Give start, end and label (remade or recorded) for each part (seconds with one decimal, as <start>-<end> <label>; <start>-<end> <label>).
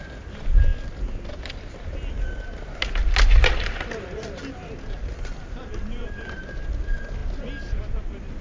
0.0-8.4 recorded